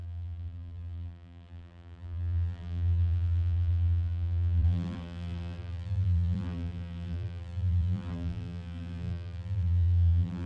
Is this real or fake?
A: fake